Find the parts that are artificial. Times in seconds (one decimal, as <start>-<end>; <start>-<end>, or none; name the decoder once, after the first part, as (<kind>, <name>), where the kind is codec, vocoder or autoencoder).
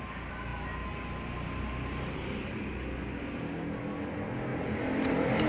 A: none